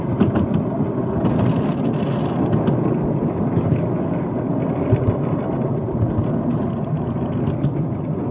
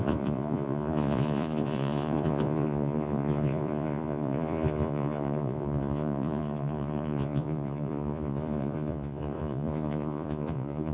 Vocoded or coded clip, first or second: second